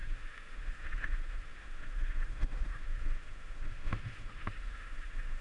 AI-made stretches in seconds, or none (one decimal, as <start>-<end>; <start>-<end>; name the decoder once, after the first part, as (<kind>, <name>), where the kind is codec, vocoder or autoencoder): 0.0-5.4 (autoencoder, DAC-VAE)